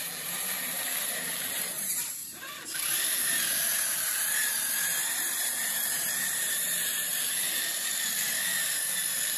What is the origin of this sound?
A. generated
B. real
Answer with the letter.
A